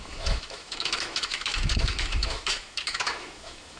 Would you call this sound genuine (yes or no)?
no